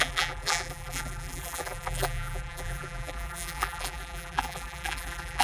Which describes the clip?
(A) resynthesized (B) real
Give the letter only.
A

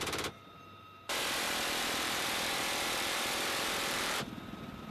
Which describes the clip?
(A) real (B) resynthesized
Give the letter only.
B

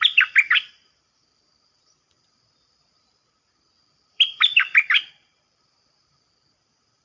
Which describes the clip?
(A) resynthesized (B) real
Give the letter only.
A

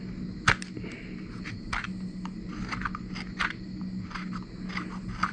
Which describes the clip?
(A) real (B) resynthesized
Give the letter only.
A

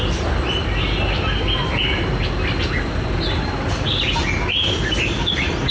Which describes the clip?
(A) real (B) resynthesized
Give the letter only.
A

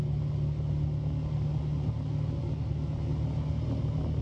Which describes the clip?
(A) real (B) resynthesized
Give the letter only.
A